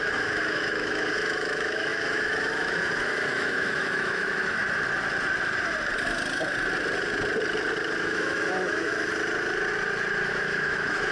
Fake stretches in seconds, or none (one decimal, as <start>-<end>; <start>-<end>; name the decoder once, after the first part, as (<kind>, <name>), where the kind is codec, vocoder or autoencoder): 0.0-4.6 (autoencoder, DAC-VAE); 8.0-9.1; 10.3-11.1